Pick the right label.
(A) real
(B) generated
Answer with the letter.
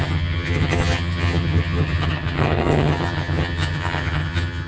B